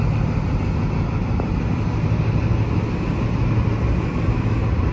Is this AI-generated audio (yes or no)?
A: no